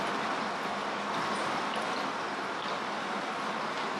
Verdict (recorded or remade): recorded